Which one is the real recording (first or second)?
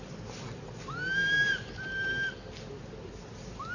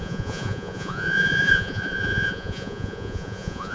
first